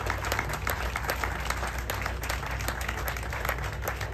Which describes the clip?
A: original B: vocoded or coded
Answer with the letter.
A